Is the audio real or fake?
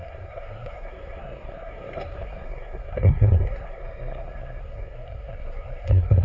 fake